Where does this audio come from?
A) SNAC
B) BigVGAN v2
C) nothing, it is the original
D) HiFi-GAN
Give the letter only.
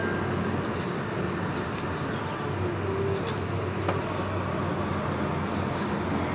C